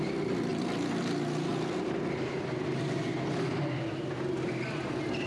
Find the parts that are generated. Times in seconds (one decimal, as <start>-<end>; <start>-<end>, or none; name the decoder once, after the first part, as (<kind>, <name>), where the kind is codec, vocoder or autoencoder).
0.5-1.0 (vocoder, BigVGAN v2); 1.5-2.3; 3.1-3.8